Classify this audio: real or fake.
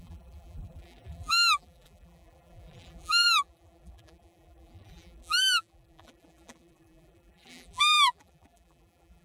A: fake